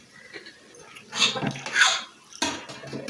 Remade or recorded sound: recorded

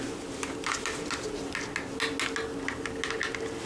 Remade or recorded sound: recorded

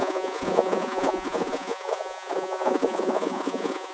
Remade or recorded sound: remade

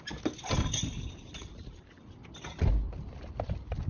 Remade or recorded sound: recorded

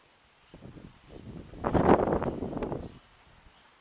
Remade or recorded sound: recorded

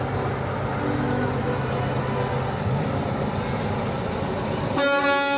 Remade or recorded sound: recorded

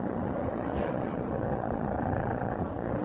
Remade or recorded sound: remade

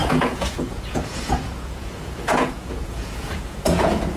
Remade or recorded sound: remade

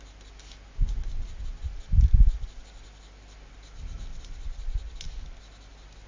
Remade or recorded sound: recorded